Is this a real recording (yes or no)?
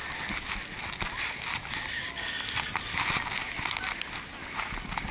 yes